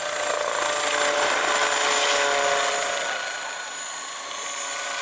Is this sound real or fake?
real